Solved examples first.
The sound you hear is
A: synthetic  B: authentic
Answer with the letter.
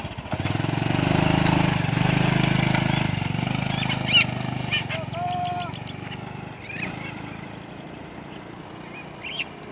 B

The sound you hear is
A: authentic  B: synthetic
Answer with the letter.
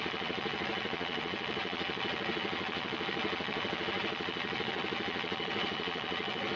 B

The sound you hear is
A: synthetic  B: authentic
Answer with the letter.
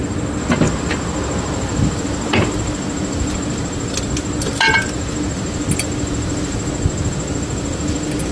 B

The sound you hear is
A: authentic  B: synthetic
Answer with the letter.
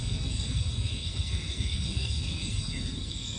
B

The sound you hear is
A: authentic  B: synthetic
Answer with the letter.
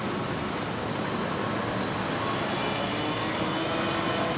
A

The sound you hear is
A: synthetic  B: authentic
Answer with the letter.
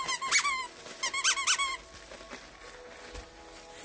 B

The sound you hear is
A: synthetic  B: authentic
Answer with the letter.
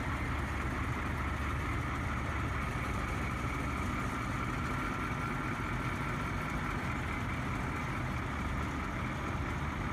B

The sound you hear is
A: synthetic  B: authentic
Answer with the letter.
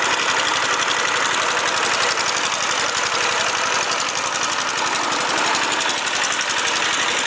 A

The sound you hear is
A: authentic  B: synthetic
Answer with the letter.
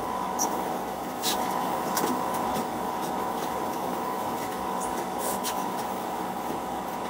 B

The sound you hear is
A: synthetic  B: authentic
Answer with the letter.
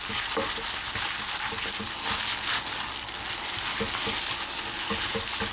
B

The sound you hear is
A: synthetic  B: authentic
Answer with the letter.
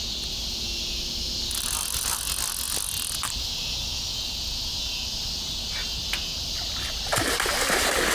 B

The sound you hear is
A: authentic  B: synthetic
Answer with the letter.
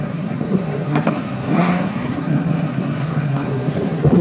B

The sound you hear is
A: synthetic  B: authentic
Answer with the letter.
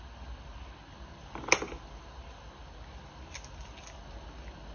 B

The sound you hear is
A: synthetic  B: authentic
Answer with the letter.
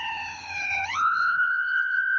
A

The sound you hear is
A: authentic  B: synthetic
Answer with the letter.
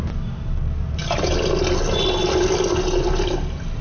A